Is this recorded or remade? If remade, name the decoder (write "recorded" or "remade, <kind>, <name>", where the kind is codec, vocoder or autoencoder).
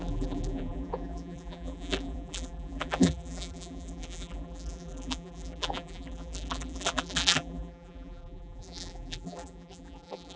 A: remade, vocoder, BigVGAN v2